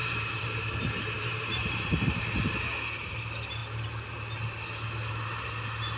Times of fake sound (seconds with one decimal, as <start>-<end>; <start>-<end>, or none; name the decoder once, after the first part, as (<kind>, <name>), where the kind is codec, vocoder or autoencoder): 0.0-2.6 (vocoder, BigVGAN v2)